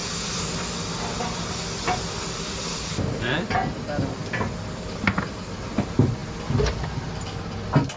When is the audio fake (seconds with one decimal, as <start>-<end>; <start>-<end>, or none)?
2.9-3.5

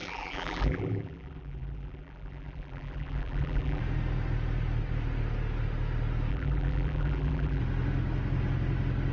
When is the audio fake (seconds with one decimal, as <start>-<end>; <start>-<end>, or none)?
0.0-3.8; 6.3-7.6